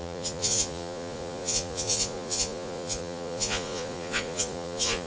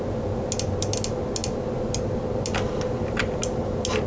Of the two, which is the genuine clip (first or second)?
second